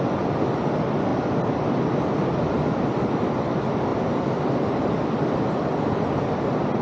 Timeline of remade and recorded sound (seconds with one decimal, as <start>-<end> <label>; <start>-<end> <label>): 0.0-3.9 recorded; 3.9-6.8 remade